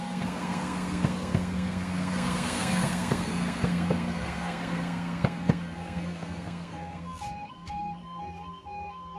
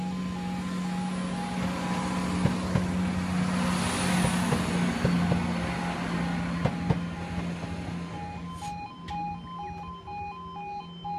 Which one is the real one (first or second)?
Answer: second